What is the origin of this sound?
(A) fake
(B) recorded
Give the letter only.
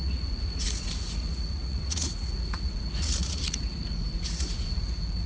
A